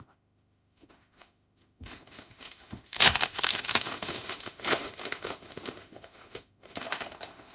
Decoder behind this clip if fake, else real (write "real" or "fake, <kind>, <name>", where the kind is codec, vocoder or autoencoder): fake, autoencoder, DAC-VAE